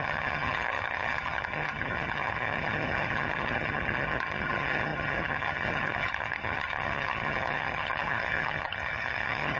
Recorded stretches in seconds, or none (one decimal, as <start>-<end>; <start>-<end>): none